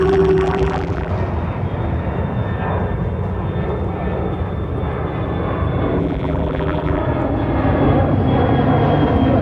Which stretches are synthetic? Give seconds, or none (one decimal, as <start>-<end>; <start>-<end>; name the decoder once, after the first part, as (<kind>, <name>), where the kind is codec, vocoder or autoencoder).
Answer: 0.0-1.1 (vocoder, BigVGAN v2); 6.0-7.0